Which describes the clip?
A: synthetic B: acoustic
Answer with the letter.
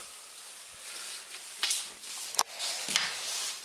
A